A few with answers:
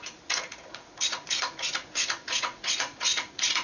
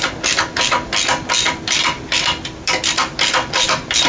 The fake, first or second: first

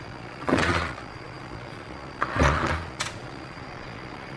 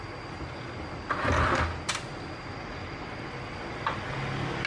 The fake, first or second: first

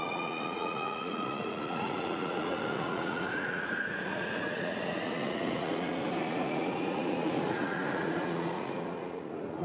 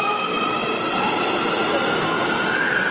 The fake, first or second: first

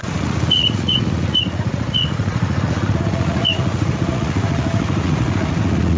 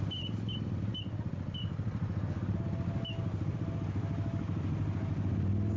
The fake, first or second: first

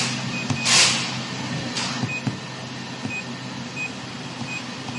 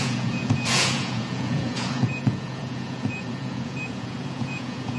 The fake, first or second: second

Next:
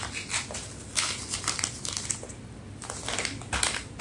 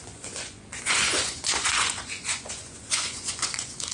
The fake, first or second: second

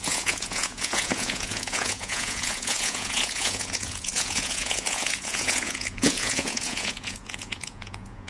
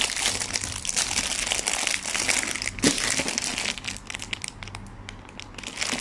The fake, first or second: first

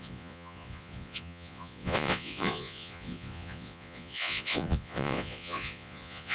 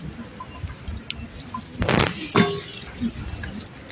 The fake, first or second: first